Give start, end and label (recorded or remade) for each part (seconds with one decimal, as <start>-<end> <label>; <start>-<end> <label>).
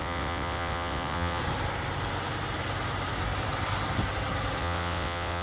0.0-1.4 remade; 1.4-4.6 recorded; 4.6-5.4 remade